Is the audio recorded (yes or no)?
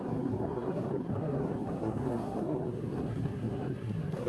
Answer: no